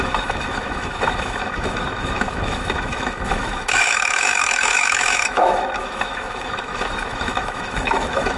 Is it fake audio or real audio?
fake